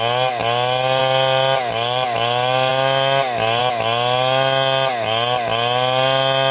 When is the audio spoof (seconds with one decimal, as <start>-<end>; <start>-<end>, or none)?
none